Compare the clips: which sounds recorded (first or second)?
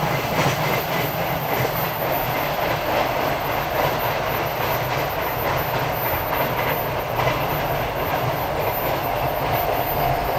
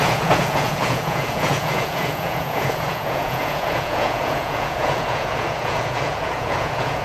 first